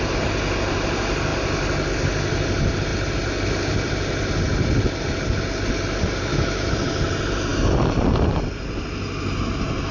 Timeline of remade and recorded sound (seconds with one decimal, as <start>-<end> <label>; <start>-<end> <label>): 0.0-6.3 recorded; 6.3-6.8 remade; 6.8-9.9 recorded